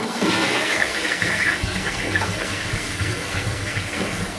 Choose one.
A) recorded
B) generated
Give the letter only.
B